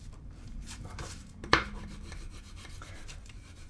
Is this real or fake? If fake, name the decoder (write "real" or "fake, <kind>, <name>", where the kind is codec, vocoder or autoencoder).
fake, vocoder, BigVGAN v2